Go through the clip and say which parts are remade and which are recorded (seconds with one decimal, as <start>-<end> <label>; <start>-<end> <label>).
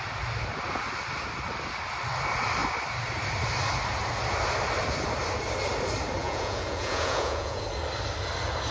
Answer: 0.0-6.2 recorded; 6.2-7.6 remade; 7.6-8.7 recorded